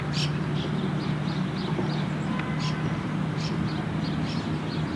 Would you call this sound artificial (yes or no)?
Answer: no